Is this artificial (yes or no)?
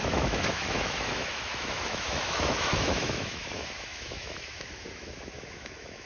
yes